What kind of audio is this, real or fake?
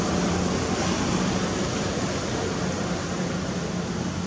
real